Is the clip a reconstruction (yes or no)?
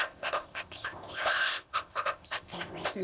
yes